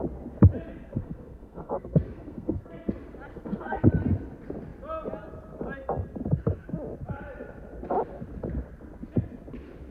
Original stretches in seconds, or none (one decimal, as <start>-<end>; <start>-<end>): 0.0-0.7; 2.9-3.3; 3.9-9.9